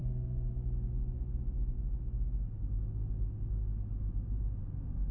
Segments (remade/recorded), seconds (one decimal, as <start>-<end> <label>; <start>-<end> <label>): 0.0-5.1 recorded